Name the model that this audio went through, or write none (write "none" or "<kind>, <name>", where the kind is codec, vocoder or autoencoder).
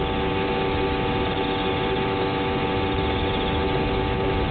none